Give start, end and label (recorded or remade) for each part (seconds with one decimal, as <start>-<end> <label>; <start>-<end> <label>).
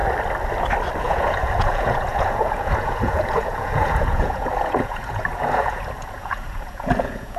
0.0-1.0 recorded; 1.0-7.4 remade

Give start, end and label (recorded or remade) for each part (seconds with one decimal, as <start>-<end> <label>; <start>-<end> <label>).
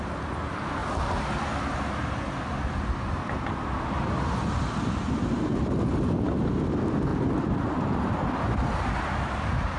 0.0-7.1 recorded; 7.1-9.0 remade; 9.0-9.8 recorded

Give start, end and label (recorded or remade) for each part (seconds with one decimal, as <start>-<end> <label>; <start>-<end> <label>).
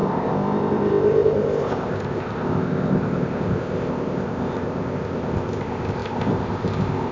0.0-7.1 remade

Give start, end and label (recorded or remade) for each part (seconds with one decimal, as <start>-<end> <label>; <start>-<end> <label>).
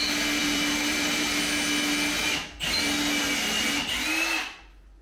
0.0-0.4 recorded; 0.4-1.4 remade; 1.4-5.0 recorded